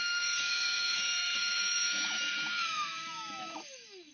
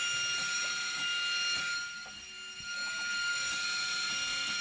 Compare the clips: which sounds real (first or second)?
second